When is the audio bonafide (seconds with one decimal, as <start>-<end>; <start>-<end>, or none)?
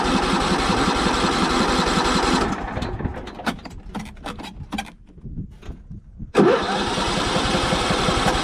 3.1-6.3